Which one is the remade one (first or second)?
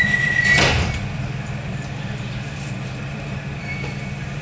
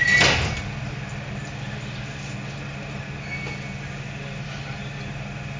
first